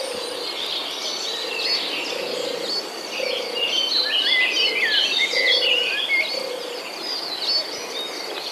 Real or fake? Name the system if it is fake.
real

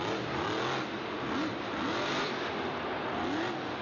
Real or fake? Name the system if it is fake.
real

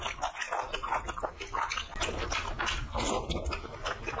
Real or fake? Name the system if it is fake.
real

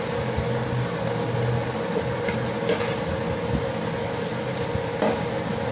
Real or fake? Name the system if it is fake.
real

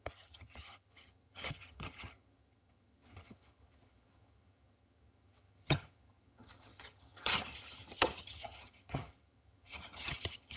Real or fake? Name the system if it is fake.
fake, vocoder, HiFi-GAN